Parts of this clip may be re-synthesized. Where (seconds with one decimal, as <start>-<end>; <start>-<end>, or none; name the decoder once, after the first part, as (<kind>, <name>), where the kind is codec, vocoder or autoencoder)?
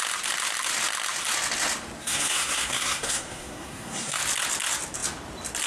2.0-4.2 (codec, SNAC)